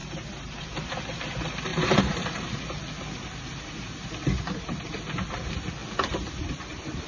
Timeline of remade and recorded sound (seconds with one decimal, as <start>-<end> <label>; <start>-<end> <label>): 0.0-1.2 remade; 1.2-1.7 recorded; 1.7-2.8 remade; 2.8-4.2 recorded; 4.2-4.9 remade; 4.9-7.1 recorded